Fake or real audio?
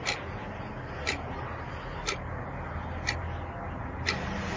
real